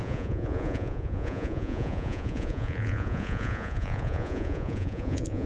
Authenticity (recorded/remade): remade